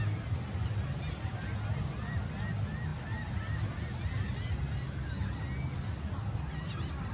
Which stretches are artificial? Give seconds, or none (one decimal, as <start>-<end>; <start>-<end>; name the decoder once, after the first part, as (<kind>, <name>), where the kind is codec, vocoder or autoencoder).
none